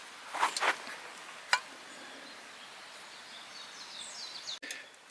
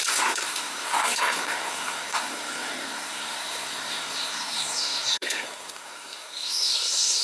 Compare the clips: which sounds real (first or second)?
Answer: first